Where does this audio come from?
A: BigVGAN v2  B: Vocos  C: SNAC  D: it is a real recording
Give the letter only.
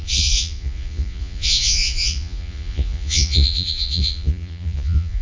B